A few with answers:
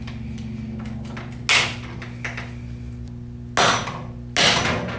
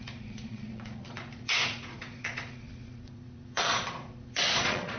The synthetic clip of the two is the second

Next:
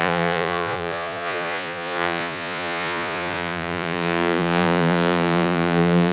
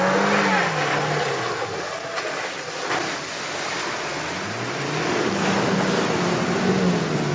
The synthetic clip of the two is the first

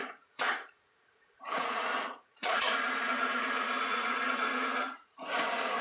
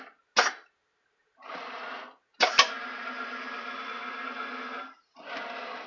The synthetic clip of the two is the first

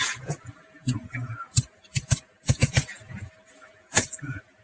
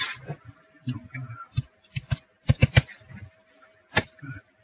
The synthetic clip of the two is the first